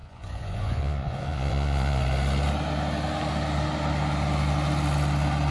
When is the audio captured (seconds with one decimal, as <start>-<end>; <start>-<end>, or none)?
2.0-5.5